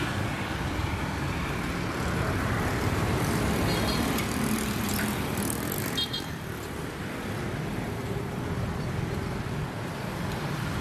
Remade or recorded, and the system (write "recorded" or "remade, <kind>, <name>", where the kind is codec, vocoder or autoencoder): remade, vocoder, BigVGAN v2